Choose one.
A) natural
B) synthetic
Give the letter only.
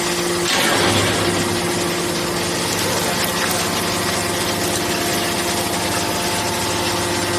A